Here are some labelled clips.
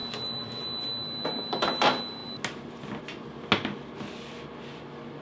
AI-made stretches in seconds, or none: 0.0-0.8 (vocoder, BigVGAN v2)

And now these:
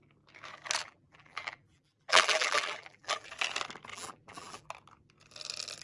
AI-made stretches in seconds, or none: 0.8-3.3 (vocoder, BigVGAN v2); 3.9-4.7

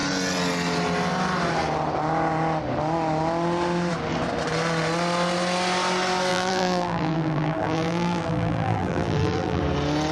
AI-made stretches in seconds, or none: 6.3-9.6 (vocoder, BigVGAN v2)

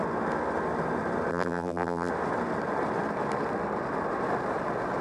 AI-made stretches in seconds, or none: 1.3-2.1 (vocoder, BigVGAN v2)

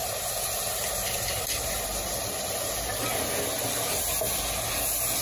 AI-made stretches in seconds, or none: 0.0-3.1 (vocoder, BigVGAN v2)